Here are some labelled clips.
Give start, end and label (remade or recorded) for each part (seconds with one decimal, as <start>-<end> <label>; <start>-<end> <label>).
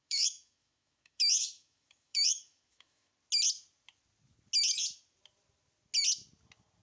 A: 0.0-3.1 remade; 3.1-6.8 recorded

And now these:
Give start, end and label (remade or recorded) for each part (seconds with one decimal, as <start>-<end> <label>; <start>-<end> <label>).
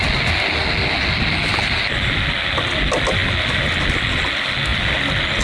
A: 0.0-5.4 recorded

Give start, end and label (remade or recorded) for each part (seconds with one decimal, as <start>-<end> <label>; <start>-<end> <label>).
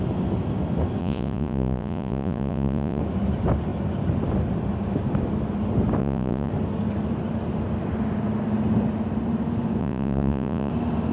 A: 0.0-1.0 recorded; 1.0-3.0 remade; 3.0-6.0 recorded; 6.0-6.5 remade; 6.5-9.8 recorded; 9.8-10.7 remade; 10.7-11.1 recorded